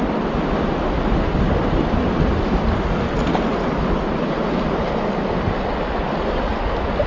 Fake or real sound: real